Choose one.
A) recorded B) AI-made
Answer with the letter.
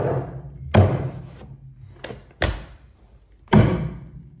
A